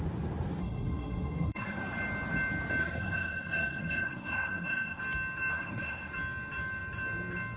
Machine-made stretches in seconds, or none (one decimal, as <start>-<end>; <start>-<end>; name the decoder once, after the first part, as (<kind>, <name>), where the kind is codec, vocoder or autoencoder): 0.6-1.8 (codec, SNAC); 2.8-5.0; 5.5-6.1